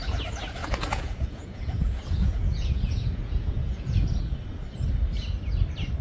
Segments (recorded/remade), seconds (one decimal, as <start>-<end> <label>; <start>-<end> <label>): 0.0-0.6 recorded; 0.6-4.2 remade; 4.2-6.0 recorded

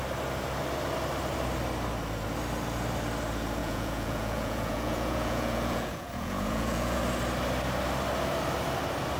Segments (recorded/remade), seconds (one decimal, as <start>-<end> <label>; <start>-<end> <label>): 0.0-3.6 recorded; 3.6-7.0 remade; 7.0-9.2 recorded